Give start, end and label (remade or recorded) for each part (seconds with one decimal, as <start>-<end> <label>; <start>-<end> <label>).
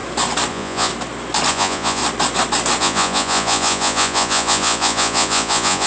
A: 0.0-0.5 recorded; 0.5-0.9 remade; 0.9-1.5 recorded; 1.5-2.0 remade; 2.0-2.8 recorded; 2.8-5.9 remade